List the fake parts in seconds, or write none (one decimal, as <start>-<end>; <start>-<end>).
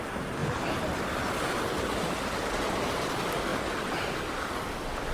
3.5-4.5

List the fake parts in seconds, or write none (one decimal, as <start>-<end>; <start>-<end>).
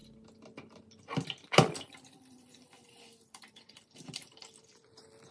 1.9-5.3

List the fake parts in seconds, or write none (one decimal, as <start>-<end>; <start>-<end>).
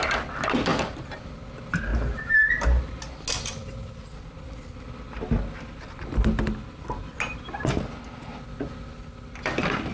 0.7-1.2; 1.9-2.9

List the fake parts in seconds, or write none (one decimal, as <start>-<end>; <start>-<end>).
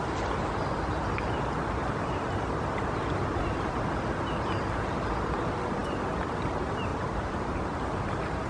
6.9-7.8